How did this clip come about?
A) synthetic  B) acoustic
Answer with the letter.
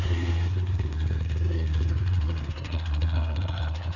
A